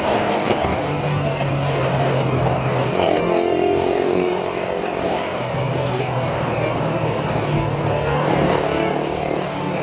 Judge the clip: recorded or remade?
remade